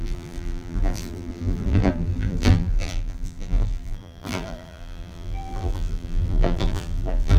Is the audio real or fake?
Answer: fake